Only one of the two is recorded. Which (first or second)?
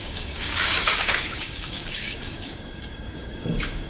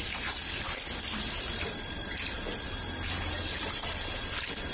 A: second